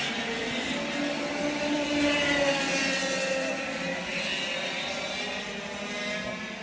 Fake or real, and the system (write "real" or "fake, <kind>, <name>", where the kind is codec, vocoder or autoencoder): real